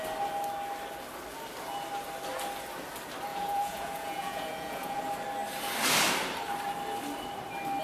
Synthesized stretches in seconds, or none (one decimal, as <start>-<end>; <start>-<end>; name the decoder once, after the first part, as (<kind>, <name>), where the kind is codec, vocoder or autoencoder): 3.3-5.0 (vocoder, Vocos)